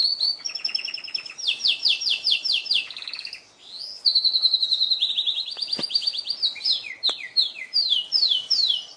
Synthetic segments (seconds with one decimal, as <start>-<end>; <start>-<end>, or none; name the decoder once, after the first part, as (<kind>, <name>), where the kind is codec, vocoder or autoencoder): none